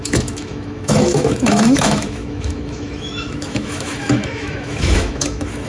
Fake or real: fake